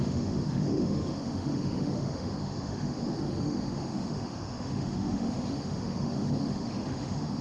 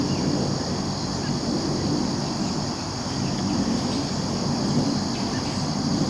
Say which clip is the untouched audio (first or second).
second